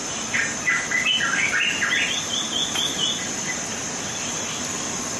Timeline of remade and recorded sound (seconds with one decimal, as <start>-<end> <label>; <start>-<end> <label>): 0.0-5.2 recorded